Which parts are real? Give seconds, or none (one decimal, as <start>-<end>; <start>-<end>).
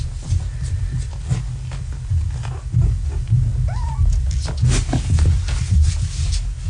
0.0-6.7